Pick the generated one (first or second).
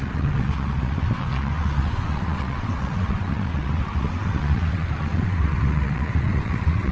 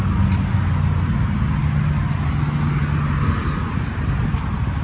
first